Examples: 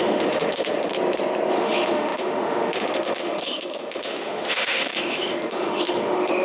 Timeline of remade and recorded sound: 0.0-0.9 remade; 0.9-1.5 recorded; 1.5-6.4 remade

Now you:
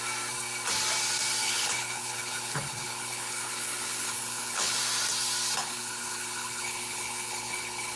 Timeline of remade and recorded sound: 0.0-1.4 recorded; 1.4-4.8 remade; 4.8-5.6 recorded; 5.6-8.0 remade